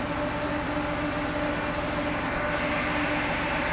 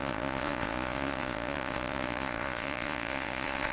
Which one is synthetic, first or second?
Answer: second